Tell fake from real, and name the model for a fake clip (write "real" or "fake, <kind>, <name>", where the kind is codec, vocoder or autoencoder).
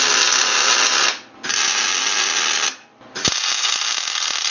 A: real